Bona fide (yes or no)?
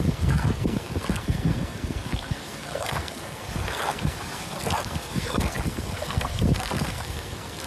no